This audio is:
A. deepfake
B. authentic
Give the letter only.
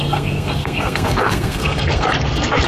A